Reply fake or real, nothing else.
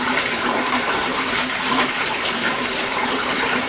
fake